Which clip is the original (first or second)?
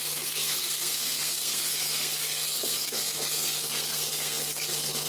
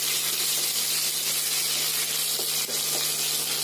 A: second